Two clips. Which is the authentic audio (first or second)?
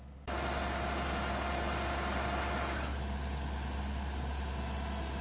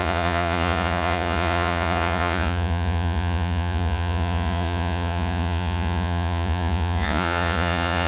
first